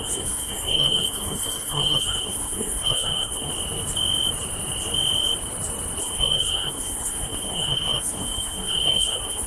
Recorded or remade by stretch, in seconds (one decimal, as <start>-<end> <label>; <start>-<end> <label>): 0.0-3.5 remade; 3.5-6.0 recorded; 6.0-9.5 remade